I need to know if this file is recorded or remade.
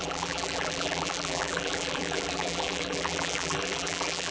remade